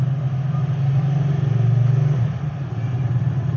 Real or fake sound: real